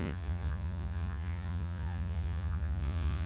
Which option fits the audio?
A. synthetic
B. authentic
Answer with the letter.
A